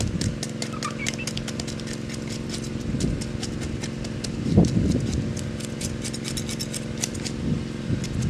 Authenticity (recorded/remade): recorded